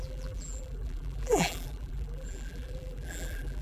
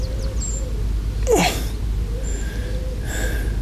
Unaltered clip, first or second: second